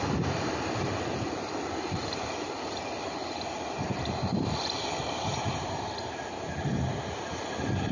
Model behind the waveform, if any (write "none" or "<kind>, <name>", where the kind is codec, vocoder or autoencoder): vocoder, BigVGAN v2